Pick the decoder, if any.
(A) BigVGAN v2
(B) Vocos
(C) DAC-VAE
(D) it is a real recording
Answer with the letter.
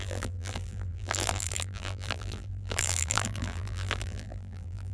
A